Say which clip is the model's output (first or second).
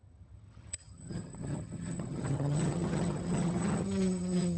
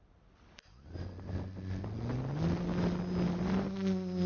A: first